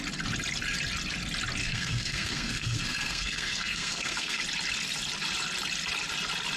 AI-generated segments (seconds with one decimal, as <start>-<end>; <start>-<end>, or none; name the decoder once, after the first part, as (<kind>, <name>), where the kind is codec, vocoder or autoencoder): 1.6-4.4 (codec, SNAC)